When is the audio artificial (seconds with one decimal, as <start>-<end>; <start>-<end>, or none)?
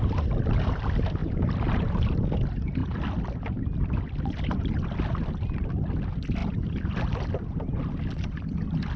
1.2-2.2